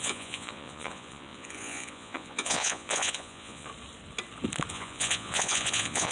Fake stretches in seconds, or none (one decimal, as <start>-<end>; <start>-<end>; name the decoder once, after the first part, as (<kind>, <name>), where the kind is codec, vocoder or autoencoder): 0.0-3.7 (vocoder, Vocos); 4.7-6.1